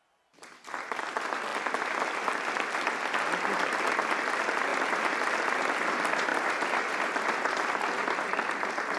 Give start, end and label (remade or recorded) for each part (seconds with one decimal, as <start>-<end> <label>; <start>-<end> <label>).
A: 0.0-4.7 remade; 4.7-5.4 recorded; 5.4-9.0 remade